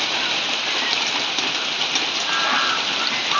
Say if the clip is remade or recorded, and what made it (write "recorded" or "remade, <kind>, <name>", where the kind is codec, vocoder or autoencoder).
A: recorded